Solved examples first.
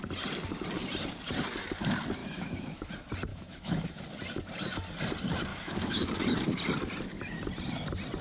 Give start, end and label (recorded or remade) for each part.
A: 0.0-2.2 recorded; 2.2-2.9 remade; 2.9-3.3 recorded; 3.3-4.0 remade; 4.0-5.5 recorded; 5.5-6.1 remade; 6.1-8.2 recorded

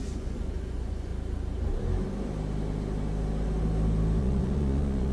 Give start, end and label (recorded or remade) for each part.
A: 0.0-1.1 remade; 1.1-4.2 recorded; 4.2-5.1 remade

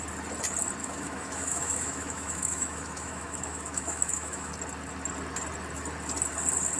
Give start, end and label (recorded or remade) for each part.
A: 0.0-0.8 recorded; 0.8-4.5 remade; 4.5-6.8 recorded

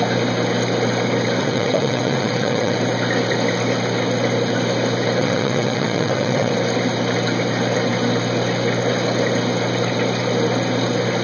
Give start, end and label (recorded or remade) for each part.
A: 0.0-1.4 recorded; 1.4-2.8 remade; 2.8-5.2 recorded; 5.2-6.5 remade; 6.5-11.2 recorded

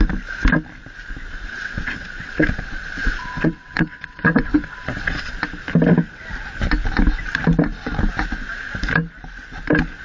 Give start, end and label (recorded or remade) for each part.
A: 0.0-1.3 recorded; 1.3-5.3 remade; 5.3-10.0 recorded

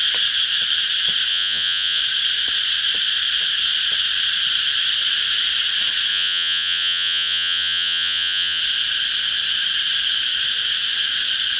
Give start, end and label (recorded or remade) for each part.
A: 0.0-1.3 recorded; 1.3-2.0 remade; 2.0-6.1 recorded; 6.1-8.6 remade; 8.6-11.6 recorded